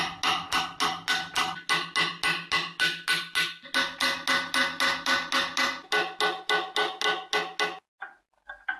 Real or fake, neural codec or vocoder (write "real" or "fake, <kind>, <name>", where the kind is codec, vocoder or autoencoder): real